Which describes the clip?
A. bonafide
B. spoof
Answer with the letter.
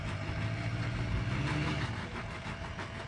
A